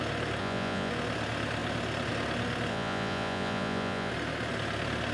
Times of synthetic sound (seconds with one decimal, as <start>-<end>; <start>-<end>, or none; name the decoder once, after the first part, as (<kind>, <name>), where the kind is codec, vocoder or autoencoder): 0.4-0.9 (vocoder, Vocos); 2.7-4.1